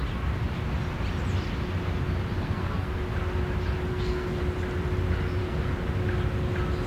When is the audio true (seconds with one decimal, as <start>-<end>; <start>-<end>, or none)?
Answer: 0.0-2.4; 3.0-3.9; 4.4-5.4; 5.9-6.9